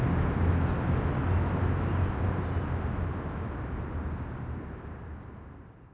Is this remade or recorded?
recorded